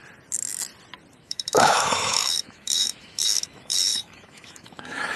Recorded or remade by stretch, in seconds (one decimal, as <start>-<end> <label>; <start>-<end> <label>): 0.0-1.2 recorded; 1.2-5.2 remade